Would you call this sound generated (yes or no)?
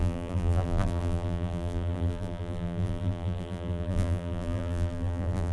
yes